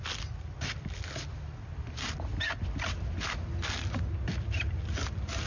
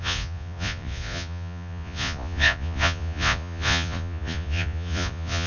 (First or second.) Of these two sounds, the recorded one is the first